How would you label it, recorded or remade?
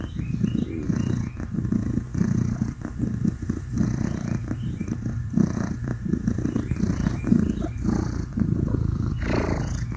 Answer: remade